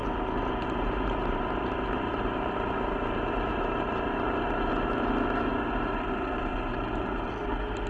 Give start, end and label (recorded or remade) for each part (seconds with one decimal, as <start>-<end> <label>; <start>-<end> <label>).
0.0-4.7 remade; 4.7-5.5 recorded; 5.5-7.3 remade; 7.3-7.9 recorded